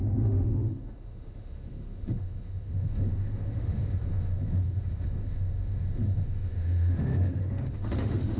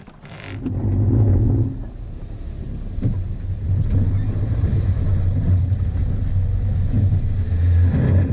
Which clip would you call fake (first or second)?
first